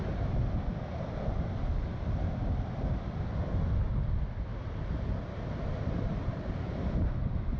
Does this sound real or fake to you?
real